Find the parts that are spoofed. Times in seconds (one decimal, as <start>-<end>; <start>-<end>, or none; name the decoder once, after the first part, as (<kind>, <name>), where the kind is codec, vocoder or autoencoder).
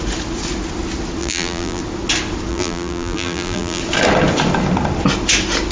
1.2-1.8 (vocoder, BigVGAN v2); 2.5-3.8